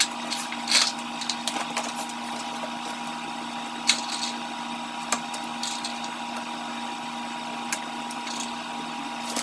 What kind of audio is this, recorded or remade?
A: recorded